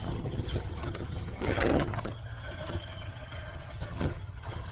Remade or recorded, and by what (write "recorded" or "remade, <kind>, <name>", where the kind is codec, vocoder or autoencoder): remade, vocoder, HiFi-GAN